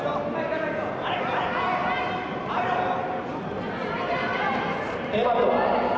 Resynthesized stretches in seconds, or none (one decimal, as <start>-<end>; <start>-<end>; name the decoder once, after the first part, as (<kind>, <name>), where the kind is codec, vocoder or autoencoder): none

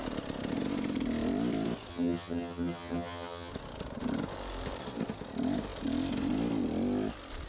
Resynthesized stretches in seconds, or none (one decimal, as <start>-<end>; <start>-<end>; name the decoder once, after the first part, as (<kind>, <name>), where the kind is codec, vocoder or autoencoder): 1.9-3.5 (vocoder, HiFi-GAN)